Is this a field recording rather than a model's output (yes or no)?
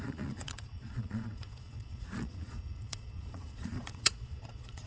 no